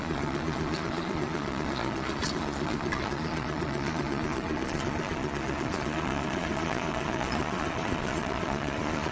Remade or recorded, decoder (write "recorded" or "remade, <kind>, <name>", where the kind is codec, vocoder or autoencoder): remade, vocoder, Vocos